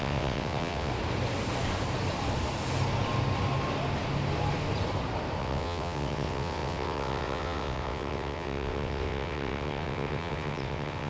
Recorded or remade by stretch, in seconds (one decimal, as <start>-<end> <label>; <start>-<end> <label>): 0.0-0.9 remade; 0.9-5.4 recorded; 5.4-11.1 remade